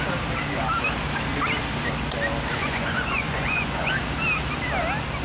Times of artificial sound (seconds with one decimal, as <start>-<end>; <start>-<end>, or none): 2.6-3.9